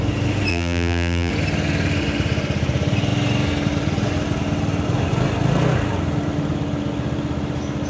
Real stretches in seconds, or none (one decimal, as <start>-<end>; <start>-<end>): 0.0-0.5; 1.3-7.9